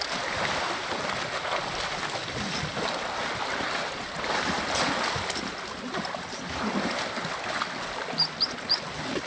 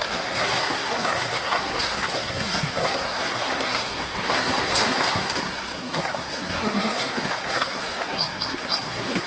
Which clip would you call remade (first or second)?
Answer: second